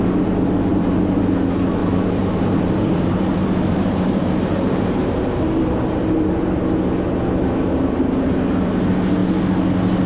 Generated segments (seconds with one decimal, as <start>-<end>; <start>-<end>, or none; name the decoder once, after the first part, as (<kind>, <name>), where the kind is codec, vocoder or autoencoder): 0.7-1.2 (vocoder, BigVGAN v2); 1.8-6.4